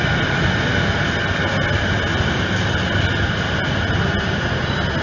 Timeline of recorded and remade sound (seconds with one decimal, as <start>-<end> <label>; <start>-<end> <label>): 0.0-5.0 recorded